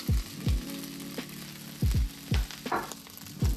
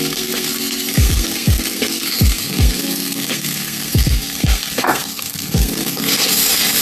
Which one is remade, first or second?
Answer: second